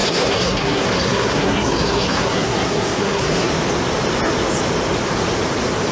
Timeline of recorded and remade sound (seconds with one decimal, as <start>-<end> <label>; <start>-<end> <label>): 0.0-3.5 remade; 3.5-5.9 recorded